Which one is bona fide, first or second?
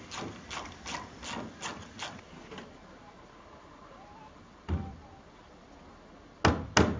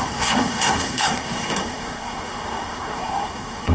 first